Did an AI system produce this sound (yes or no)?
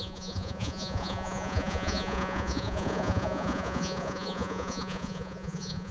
yes